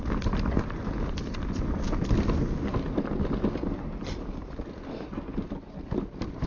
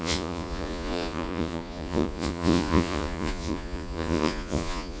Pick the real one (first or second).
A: first